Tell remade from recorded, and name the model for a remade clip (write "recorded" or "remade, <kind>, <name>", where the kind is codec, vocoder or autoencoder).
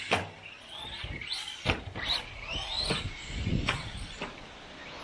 recorded